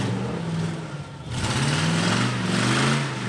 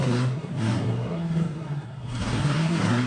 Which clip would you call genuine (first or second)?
first